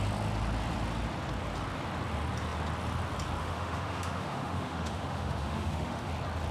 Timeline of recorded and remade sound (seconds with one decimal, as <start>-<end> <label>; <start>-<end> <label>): 0.0-3.4 recorded; 3.4-6.1 remade; 6.1-6.5 recorded